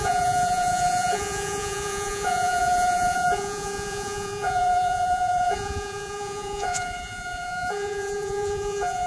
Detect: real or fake fake